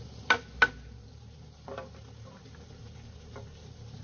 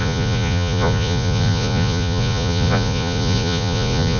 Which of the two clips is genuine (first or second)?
first